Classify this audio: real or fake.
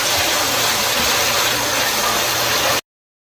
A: real